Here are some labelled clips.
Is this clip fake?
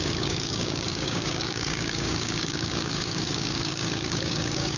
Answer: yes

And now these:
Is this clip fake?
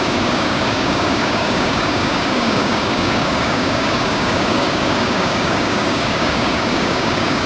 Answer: yes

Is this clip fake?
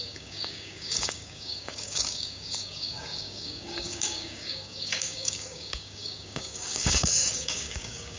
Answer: yes